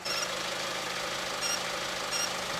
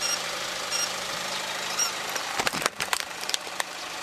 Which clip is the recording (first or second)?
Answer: first